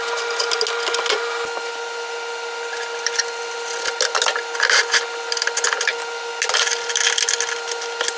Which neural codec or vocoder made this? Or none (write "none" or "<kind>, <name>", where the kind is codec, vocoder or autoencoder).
none